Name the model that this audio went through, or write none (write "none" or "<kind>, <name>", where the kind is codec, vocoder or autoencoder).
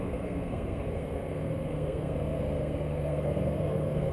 codec, SNAC